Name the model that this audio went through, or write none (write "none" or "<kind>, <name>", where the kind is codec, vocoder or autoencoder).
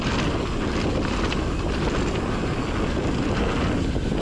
none